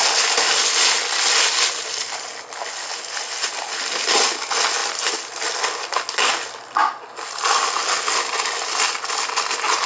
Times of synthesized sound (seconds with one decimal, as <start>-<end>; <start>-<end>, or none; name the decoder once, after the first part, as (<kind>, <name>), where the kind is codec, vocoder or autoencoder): none